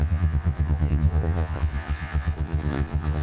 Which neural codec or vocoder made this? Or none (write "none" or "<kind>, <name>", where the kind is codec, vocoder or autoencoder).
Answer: vocoder, Vocos